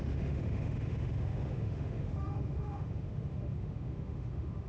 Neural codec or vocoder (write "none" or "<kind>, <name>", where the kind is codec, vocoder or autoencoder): autoencoder, DAC-VAE